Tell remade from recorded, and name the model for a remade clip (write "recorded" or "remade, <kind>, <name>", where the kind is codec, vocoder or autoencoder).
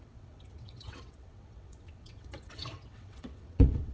remade, vocoder, WaveNeXt